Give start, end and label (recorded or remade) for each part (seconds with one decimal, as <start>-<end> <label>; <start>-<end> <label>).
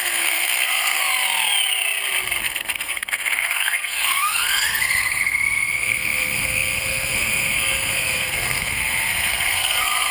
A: 0.0-1.0 remade; 1.0-2.4 recorded; 2.4-10.1 remade